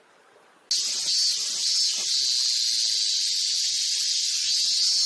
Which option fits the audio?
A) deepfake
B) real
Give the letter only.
B